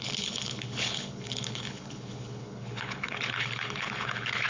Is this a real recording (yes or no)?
no